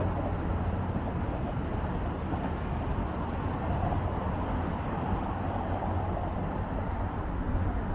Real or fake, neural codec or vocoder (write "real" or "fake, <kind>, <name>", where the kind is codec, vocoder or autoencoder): real